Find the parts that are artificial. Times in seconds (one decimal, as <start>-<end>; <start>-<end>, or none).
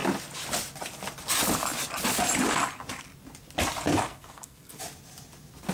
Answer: 4.0-4.8